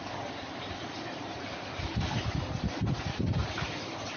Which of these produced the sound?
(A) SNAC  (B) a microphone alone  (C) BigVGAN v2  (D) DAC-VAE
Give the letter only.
C